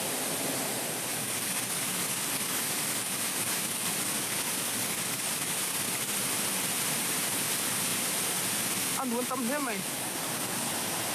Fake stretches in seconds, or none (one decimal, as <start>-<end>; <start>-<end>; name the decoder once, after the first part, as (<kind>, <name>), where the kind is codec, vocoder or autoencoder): 1.1-6.1 (codec, DAC); 9.6-10.7